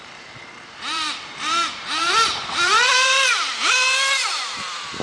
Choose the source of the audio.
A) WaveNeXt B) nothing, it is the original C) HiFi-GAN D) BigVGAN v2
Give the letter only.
D